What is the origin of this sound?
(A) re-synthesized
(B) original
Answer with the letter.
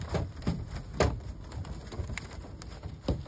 B